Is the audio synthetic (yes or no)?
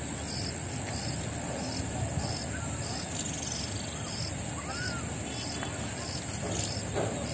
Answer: no